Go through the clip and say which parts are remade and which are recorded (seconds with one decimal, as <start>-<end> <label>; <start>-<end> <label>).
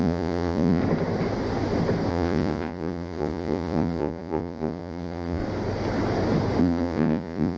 0.0-0.8 remade; 0.8-2.1 recorded; 2.1-5.4 remade; 5.4-6.6 recorded; 6.6-7.6 remade